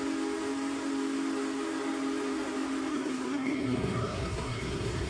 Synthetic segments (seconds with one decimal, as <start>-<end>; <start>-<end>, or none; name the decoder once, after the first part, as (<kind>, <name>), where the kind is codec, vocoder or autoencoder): 2.9-5.1 (codec, SNAC)